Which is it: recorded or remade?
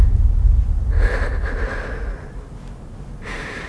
recorded